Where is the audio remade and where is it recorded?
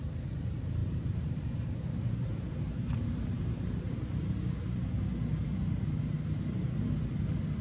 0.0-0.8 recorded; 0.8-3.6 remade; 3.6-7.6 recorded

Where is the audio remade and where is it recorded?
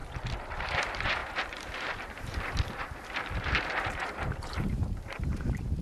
0.0-0.5 recorded; 0.5-5.8 remade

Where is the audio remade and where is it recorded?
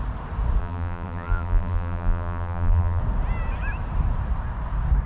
0.0-0.6 recorded; 0.6-3.0 remade; 3.0-5.1 recorded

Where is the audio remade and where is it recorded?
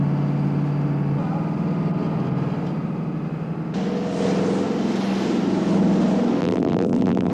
0.0-6.4 recorded; 6.4-7.3 remade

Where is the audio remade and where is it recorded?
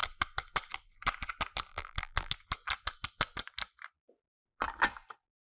0.0-1.7 recorded; 1.7-2.3 remade; 2.3-5.6 recorded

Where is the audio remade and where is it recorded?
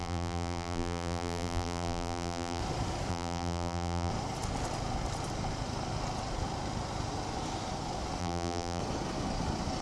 0.0-2.6 remade; 2.6-3.1 recorded; 3.1-4.1 remade; 4.1-8.2 recorded; 8.2-8.8 remade; 8.8-9.8 recorded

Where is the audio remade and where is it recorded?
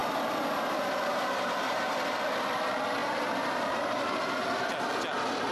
0.0-1.9 remade; 1.9-3.0 recorded; 3.0-4.7 remade; 4.7-5.5 recorded